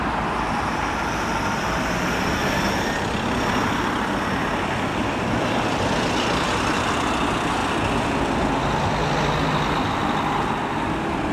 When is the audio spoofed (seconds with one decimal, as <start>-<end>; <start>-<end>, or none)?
4.9-6.6